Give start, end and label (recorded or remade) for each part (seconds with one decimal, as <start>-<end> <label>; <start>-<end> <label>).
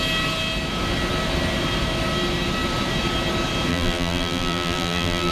0.0-3.7 recorded; 3.7-5.3 remade